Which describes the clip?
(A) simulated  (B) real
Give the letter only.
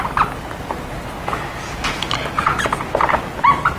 B